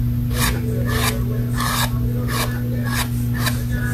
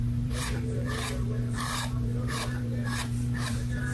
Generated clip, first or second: second